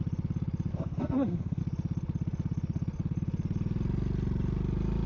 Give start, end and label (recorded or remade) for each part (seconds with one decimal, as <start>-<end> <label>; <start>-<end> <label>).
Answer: 0.0-0.7 recorded; 0.7-1.6 remade; 1.6-5.1 recorded